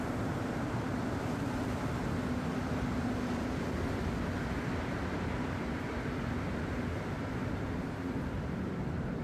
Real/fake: real